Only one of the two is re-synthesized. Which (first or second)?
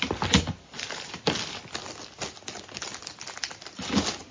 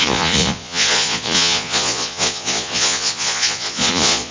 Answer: second